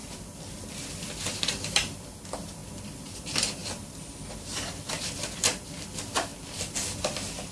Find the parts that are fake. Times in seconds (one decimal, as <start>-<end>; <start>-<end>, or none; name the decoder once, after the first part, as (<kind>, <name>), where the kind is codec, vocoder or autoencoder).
0.0-2.6 (vocoder, BigVGAN v2); 3.2-7.5